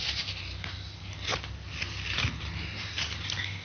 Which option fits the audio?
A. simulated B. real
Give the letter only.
B